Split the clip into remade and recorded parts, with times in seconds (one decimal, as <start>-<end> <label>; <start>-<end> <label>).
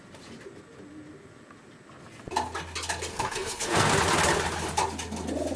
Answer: 0.0-3.1 recorded; 3.1-3.9 remade; 3.9-5.6 recorded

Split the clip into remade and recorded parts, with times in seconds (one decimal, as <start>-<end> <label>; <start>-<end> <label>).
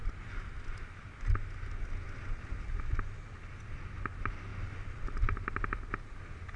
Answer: 0.0-6.6 recorded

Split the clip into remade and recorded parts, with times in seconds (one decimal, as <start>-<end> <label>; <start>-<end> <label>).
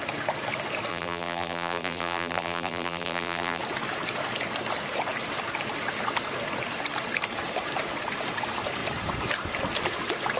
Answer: 0.0-0.9 recorded; 0.9-3.6 remade; 3.6-10.4 recorded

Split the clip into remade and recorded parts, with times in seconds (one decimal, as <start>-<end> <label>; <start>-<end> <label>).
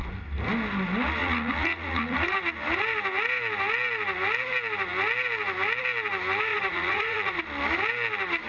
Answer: 0.0-1.2 recorded; 1.2-2.4 remade; 2.4-6.5 recorded; 6.5-7.4 remade; 7.4-8.5 recorded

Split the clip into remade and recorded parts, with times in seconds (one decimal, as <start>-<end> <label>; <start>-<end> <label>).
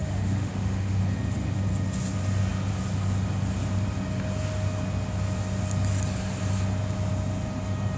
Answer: 0.0-1.0 remade; 1.0-8.0 recorded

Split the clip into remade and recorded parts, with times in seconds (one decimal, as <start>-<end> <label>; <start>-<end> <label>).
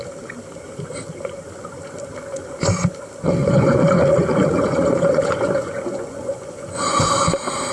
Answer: 0.0-3.4 recorded; 3.4-7.0 remade; 7.0-7.7 recorded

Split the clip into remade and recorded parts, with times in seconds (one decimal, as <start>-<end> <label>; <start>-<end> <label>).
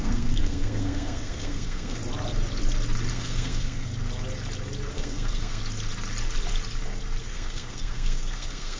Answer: 0.0-2.0 remade; 2.0-3.1 recorded; 3.1-3.9 remade; 3.9-4.9 recorded; 4.9-5.6 remade; 5.6-7.2 recorded; 7.2-8.8 remade